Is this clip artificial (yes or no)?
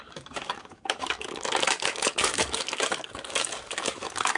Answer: yes